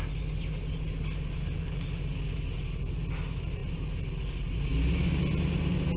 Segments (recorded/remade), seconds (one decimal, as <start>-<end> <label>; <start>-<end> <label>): 0.0-6.0 recorded